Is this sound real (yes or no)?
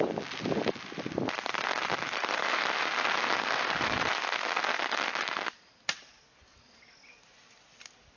yes